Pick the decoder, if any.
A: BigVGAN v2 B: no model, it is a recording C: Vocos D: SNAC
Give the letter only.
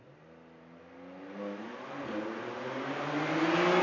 B